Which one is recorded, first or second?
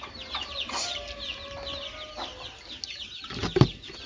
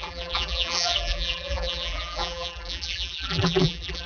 first